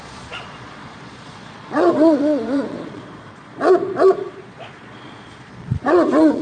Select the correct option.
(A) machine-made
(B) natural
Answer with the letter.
A